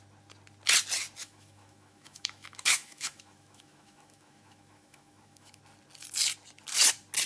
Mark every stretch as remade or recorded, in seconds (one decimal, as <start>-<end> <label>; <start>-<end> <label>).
0.0-1.2 recorded; 1.2-5.6 remade; 5.6-7.3 recorded